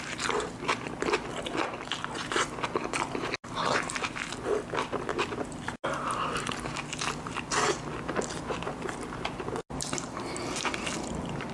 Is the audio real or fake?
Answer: real